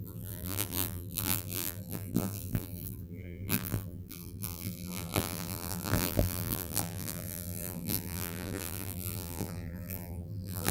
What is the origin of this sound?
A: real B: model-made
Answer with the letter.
B